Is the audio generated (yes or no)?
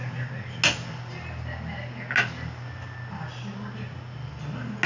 no